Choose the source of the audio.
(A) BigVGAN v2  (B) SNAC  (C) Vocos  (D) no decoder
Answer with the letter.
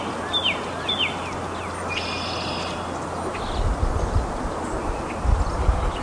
D